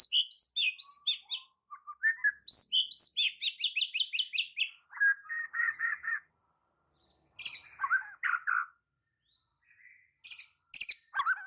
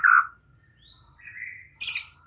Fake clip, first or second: second